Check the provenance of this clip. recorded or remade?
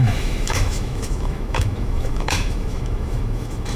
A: remade